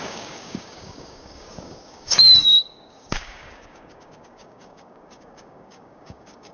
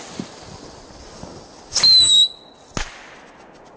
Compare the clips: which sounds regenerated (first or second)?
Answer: first